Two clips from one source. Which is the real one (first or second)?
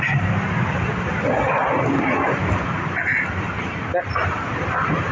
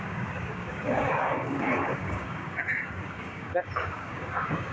first